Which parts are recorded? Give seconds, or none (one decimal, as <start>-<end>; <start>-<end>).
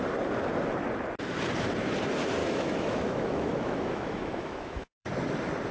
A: 0.0-2.4; 5.1-5.7